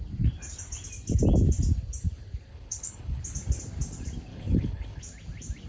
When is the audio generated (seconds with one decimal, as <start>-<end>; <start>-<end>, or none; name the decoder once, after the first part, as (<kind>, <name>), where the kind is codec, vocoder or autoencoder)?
2.5-3.2 (codec, HILCodec); 4.3-5.0